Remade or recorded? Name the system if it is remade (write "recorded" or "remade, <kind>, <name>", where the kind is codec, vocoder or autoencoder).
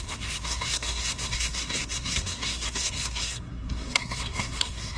remade, codec, SNAC